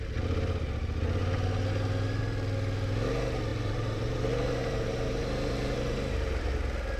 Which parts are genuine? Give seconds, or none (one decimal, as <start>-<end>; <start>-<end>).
0.0-3.5; 6.5-7.0

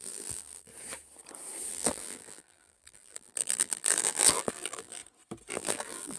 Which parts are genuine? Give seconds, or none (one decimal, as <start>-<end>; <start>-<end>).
0.7-1.7; 5.0-5.5

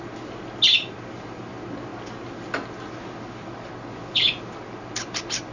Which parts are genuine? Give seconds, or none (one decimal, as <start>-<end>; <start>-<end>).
0.0-5.5

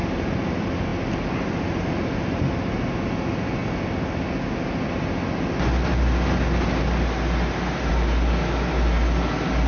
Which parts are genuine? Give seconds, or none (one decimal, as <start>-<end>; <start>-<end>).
0.0-9.7

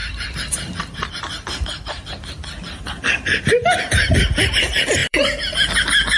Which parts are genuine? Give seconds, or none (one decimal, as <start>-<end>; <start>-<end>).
1.2-5.0; 5.8-6.2

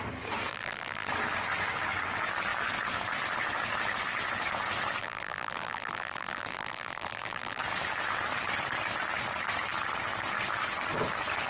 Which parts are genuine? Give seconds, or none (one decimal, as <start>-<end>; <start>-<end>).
0.0-0.5; 1.1-5.0; 7.6-11.5

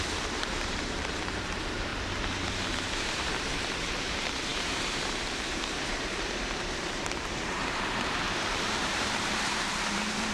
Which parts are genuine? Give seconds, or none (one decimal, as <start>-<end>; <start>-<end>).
1.9-2.5

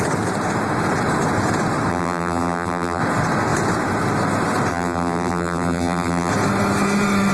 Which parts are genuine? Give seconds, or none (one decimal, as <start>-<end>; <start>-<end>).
0.0-1.9; 3.0-4.7; 6.3-7.3